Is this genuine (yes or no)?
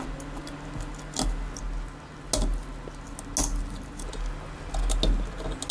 yes